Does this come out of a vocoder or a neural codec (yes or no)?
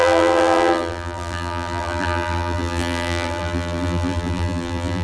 yes